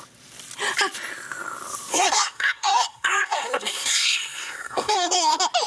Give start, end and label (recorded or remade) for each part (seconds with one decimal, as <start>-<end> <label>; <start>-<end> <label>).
0.0-1.9 recorded; 1.9-5.3 remade; 5.3-5.7 recorded